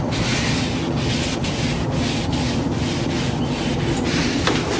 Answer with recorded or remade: recorded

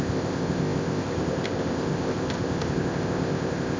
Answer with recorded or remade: remade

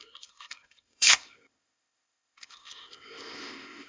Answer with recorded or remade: remade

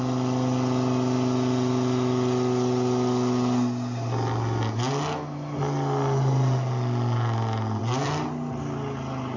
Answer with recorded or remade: recorded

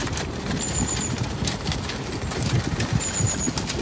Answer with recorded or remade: recorded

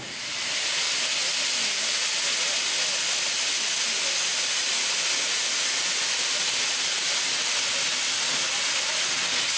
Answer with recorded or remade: recorded